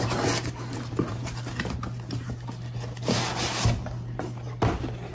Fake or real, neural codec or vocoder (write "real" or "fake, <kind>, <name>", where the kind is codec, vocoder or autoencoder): real